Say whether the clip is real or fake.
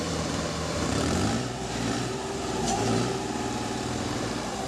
fake